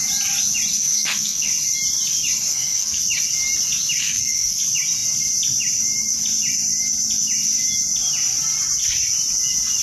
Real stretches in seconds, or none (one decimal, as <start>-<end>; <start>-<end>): 0.0-0.7; 1.5-2.5; 3.0-4.0; 4.6-9.8